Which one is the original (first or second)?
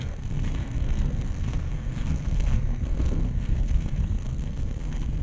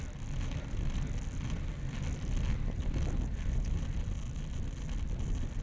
second